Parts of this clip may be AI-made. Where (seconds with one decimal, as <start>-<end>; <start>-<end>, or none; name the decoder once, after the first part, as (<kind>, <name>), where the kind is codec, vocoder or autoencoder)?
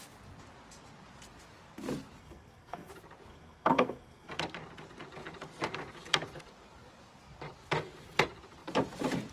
2.2-2.9 (codec, SNAC); 3.3-4.3